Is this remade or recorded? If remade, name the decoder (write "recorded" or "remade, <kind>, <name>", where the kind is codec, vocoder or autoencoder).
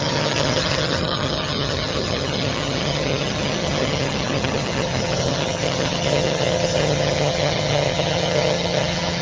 remade, vocoder, HiFi-GAN